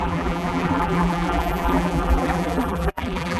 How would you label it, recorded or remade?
remade